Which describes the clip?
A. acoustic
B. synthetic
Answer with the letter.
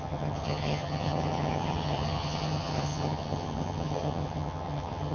B